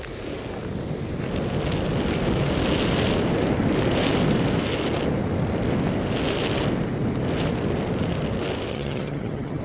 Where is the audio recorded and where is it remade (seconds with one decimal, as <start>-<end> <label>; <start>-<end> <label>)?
0.0-8.7 recorded; 8.7-9.6 remade